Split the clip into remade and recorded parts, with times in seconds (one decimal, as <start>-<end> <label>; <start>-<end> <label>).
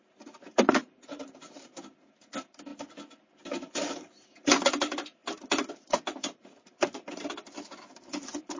0.0-2.7 remade; 2.7-3.5 recorded; 3.5-8.6 remade